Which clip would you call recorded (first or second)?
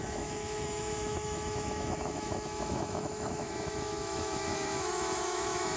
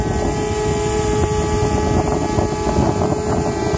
second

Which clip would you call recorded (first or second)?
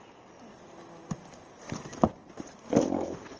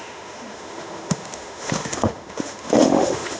first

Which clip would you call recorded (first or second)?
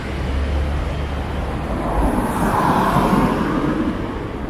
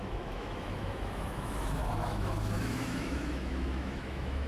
first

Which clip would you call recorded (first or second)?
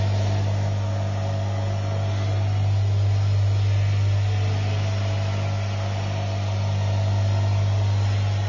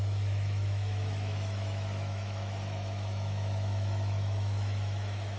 first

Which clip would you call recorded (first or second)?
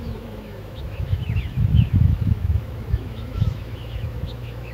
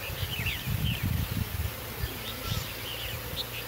second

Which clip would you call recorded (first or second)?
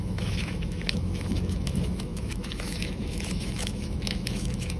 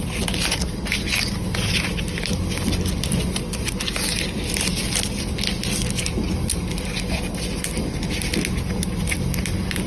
second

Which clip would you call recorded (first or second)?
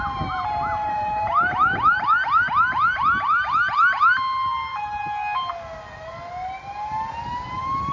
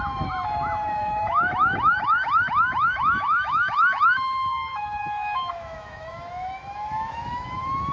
first